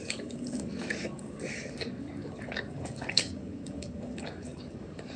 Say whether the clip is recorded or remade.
remade